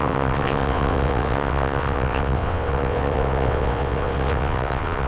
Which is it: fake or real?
fake